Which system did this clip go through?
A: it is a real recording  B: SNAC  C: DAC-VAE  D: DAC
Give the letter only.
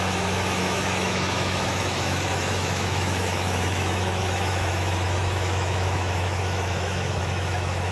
C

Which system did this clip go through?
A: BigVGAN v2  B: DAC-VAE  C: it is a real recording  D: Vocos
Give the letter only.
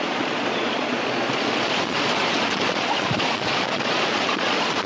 D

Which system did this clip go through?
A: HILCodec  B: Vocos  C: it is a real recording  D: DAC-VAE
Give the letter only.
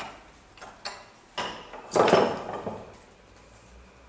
C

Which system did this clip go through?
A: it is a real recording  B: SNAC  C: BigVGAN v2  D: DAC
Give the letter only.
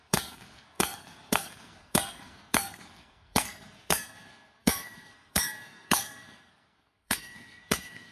B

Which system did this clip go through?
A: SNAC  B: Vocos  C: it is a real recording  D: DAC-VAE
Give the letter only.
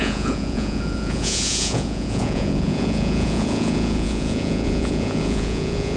B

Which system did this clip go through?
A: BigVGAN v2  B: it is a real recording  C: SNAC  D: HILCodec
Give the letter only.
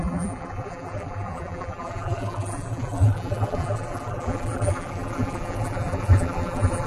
A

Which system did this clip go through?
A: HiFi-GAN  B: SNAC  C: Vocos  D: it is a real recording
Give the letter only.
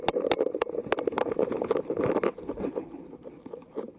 D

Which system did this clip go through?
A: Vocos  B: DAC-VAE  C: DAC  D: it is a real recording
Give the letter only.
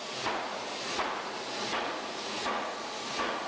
A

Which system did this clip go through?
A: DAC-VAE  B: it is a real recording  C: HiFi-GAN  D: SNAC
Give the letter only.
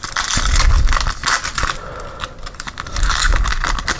B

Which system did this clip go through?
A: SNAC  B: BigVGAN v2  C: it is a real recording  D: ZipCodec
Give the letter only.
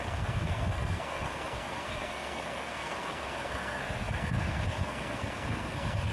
A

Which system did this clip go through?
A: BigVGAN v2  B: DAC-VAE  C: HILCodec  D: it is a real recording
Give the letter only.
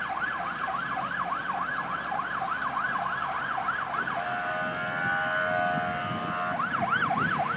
D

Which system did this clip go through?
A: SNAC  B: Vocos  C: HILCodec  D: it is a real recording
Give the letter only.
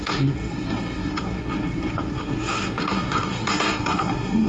A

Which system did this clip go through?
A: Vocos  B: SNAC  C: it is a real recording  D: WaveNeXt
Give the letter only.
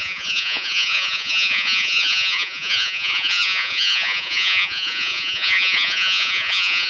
A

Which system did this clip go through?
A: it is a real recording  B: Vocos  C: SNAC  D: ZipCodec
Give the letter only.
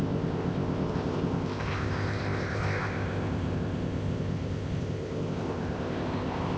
D